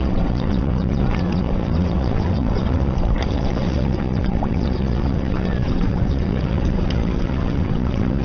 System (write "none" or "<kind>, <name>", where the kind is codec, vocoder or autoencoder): vocoder, WaveNeXt